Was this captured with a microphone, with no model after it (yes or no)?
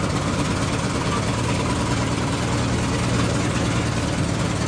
yes